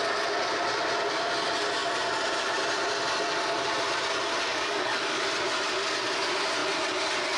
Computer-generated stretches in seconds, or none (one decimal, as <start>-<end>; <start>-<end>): 4.5-5.2